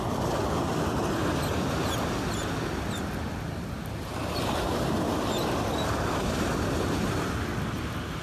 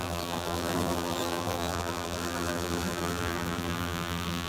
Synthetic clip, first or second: second